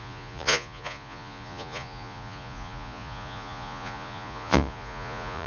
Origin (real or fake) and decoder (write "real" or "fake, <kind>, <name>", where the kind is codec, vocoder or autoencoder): fake, vocoder, Vocos